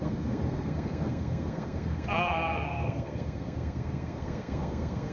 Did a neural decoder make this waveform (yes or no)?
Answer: yes